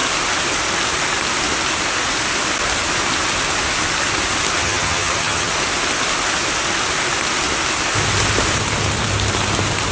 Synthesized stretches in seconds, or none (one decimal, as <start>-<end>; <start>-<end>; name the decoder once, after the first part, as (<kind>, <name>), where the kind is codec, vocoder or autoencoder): 4.6-5.5 (vocoder, HiFi-GAN)

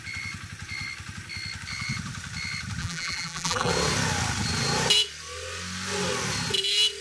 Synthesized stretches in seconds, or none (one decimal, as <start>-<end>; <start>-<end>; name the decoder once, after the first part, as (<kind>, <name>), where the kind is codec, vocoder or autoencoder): 2.8-3.7 (vocoder, BigVGAN v2)